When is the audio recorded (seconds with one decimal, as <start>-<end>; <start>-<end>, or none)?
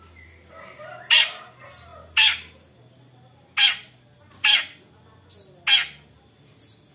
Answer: 0.0-6.9